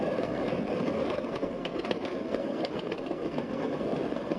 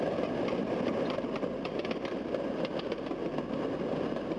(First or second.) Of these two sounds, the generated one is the first